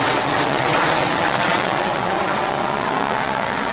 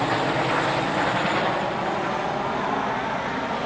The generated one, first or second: first